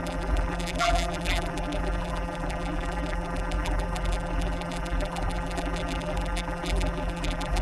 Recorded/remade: remade